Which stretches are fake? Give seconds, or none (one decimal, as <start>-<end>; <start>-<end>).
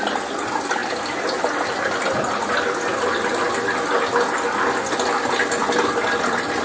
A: none